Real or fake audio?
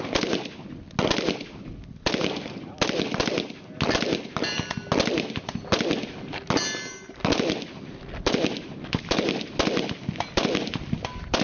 real